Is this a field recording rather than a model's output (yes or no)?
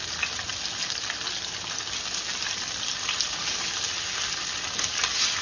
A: yes